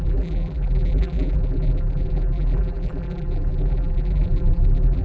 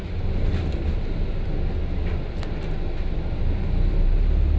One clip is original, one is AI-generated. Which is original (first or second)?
second